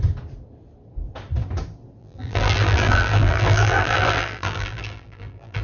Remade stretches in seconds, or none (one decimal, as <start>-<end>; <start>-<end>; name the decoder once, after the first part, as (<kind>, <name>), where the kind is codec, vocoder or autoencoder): 2.0-5.6 (vocoder, BigVGAN v2)